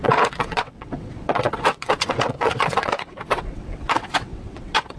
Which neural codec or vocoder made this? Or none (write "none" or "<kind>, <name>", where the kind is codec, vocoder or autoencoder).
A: vocoder, WaveNeXt